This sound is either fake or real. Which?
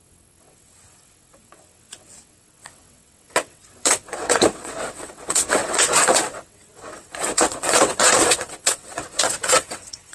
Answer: fake